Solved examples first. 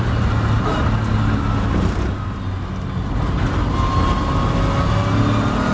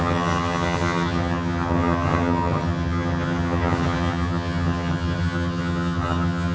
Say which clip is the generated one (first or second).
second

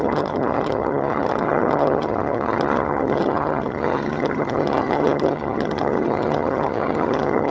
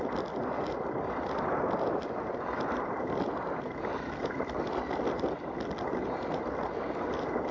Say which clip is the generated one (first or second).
first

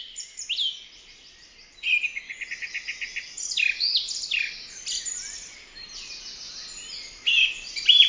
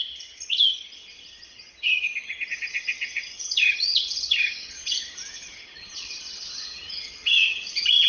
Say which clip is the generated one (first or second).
second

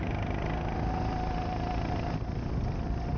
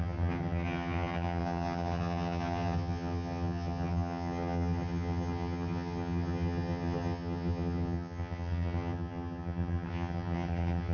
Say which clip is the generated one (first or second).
second